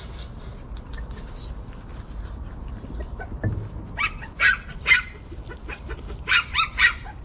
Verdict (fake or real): real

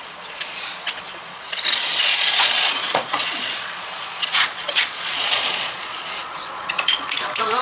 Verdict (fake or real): fake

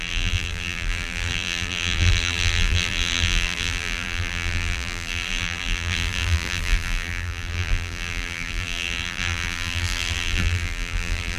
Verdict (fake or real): fake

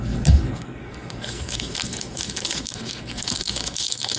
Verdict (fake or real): fake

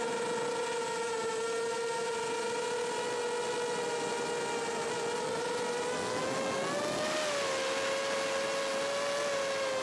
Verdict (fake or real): real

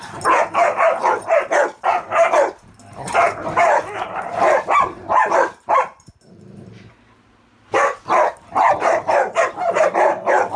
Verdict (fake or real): fake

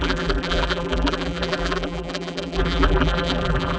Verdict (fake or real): fake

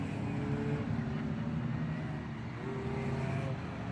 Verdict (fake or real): real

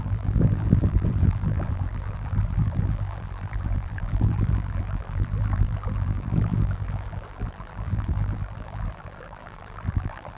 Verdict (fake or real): fake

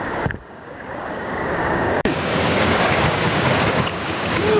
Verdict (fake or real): fake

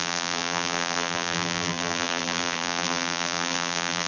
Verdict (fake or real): fake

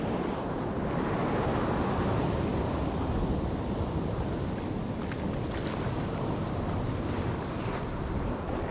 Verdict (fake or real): real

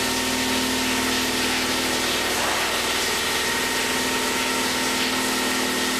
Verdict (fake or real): real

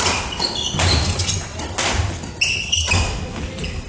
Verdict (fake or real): real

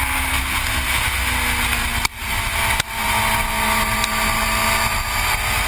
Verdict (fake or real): real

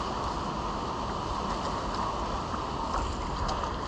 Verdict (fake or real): real